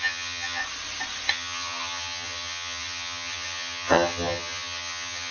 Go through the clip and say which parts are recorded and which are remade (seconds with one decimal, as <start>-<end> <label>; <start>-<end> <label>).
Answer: 0.0-0.6 remade; 0.6-1.3 recorded; 1.3-5.3 remade